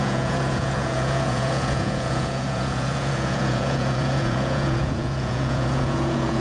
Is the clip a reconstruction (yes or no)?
yes